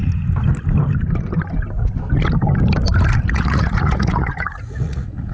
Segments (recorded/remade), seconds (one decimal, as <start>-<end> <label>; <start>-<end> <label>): 0.0-3.2 recorded; 3.2-5.3 remade